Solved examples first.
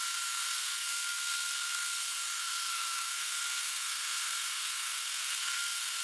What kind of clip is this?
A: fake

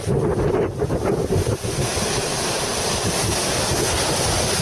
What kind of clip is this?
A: real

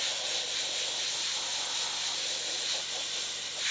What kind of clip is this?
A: real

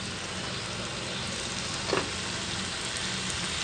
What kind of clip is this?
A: real